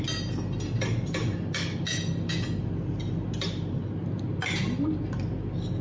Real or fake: real